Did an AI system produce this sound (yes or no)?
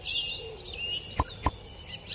no